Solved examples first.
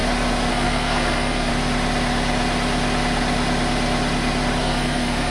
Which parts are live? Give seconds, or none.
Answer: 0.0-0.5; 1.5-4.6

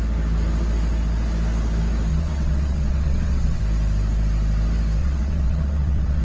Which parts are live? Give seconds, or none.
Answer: 0.0-2.1; 3.6-5.0